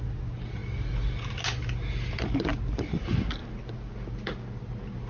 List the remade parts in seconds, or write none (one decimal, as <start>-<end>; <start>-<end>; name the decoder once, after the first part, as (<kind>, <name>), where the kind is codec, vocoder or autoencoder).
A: none